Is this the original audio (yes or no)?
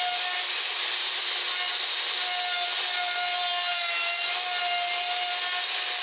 yes